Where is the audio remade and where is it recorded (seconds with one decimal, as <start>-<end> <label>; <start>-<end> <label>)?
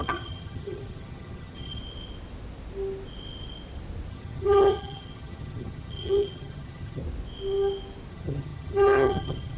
0.0-1.8 remade; 1.8-4.1 recorded; 4.1-7.0 remade; 7.0-8.1 recorded; 8.1-9.6 remade